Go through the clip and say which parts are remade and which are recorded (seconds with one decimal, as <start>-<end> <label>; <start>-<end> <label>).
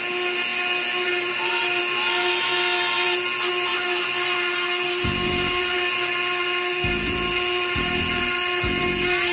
0.0-9.3 recorded